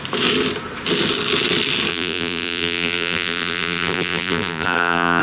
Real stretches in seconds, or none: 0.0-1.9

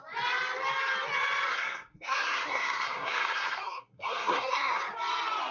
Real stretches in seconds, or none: 0.0-1.5; 4.8-5.5